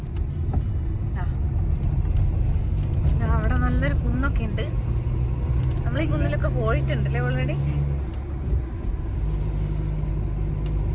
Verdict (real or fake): real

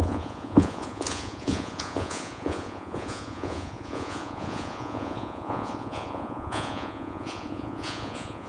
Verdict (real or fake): fake